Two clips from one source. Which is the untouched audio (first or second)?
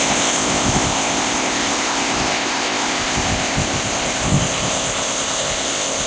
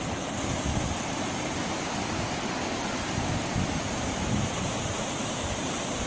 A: second